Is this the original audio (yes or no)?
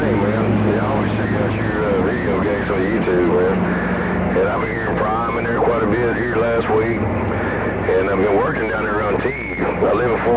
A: yes